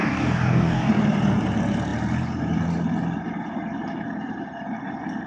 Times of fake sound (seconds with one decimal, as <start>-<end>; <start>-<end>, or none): 0.0-0.9